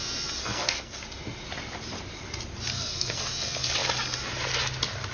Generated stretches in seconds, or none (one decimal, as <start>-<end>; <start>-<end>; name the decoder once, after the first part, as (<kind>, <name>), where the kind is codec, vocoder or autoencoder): 0.4-1.0 (codec, SNAC); 2.7-3.2